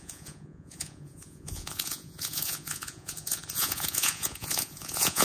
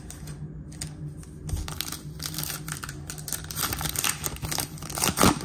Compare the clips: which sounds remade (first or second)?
first